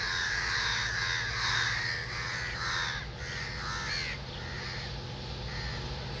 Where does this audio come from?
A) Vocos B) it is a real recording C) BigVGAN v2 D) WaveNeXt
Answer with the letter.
B